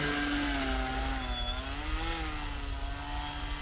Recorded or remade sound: recorded